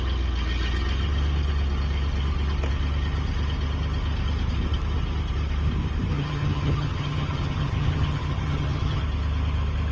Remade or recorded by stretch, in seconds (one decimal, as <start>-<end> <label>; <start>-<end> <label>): 0.0-6.1 recorded; 6.1-9.0 remade; 9.0-9.9 recorded